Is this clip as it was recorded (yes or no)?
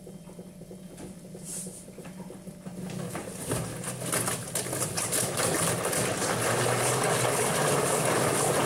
yes